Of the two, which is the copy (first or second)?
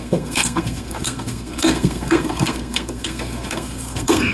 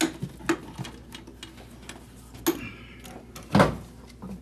first